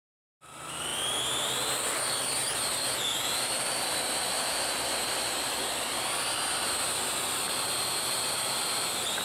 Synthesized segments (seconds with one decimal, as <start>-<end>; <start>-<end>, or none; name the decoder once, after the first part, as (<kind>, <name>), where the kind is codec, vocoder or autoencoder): none